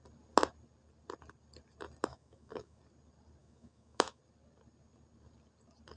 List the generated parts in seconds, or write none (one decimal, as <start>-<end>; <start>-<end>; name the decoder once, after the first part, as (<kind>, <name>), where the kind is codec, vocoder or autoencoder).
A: 2.1-2.8 (autoencoder, DAC-VAE); 3.4-4.2